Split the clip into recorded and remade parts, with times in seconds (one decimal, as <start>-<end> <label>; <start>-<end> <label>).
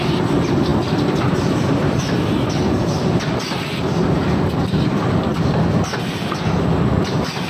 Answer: 0.0-7.5 recorded